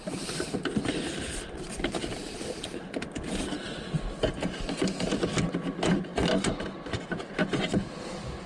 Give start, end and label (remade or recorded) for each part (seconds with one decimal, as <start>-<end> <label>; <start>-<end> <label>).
0.0-8.5 recorded